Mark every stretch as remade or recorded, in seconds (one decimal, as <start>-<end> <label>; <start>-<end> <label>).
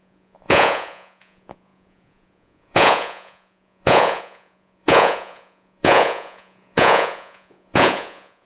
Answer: 0.0-8.4 remade